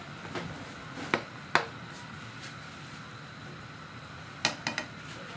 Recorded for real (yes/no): yes